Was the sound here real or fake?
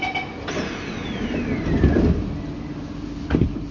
real